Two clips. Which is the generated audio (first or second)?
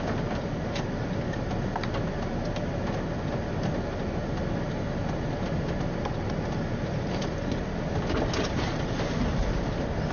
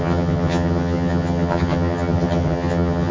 second